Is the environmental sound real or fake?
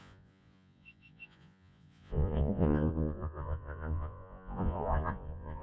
fake